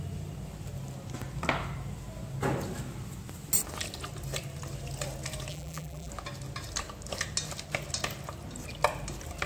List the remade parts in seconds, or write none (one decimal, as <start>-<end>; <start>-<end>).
5.5-6.1